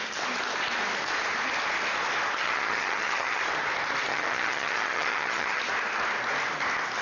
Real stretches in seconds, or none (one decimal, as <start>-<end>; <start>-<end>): 0.0-2.4; 3.4-4.1; 5.6-7.0